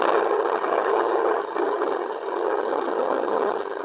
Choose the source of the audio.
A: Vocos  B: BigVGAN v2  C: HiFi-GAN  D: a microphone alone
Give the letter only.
C